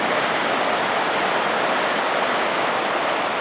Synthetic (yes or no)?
no